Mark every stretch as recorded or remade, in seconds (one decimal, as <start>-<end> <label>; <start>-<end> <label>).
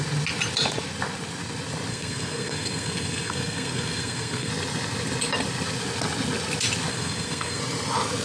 0.0-1.9 recorded; 1.9-4.5 remade; 4.5-6.9 recorded; 6.9-7.6 remade; 7.6-8.2 recorded